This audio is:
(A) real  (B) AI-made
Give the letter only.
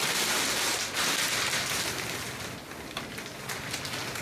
A